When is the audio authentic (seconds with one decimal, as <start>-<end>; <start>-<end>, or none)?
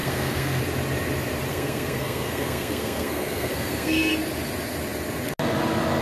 0.6-1.5; 4.1-6.0